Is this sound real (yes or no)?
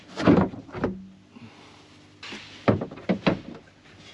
yes